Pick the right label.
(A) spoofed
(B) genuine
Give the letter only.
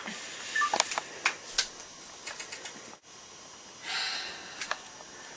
B